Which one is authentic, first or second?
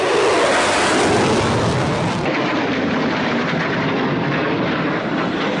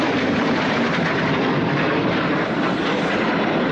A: first